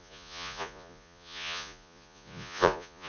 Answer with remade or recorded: remade